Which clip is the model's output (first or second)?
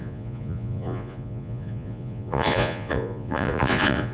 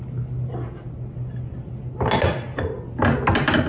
first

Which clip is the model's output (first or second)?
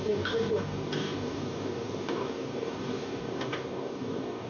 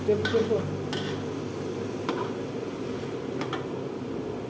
first